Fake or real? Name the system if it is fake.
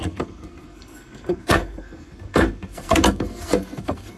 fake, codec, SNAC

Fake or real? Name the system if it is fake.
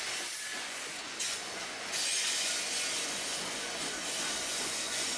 fake, vocoder, Vocos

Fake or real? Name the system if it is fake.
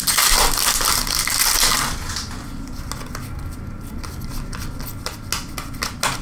real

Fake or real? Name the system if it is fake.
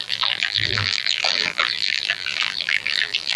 fake, vocoder, BigVGAN v2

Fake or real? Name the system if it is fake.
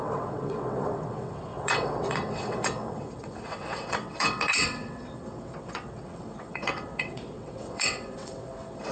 fake, vocoder, WaveNeXt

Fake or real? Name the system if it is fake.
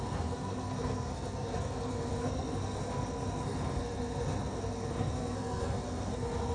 fake, codec, SNAC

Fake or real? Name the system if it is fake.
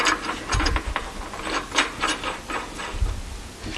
real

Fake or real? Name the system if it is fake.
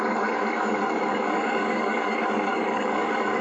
fake, codec, DAC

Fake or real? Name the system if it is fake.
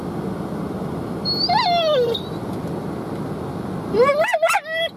real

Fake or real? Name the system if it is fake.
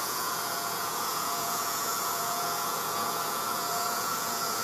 fake, vocoder, Vocos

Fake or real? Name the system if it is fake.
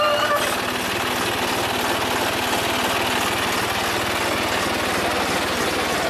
real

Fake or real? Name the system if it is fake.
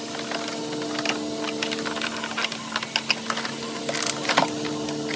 real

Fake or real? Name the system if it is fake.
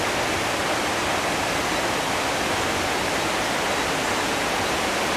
real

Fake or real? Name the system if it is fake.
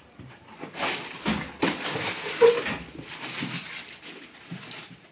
real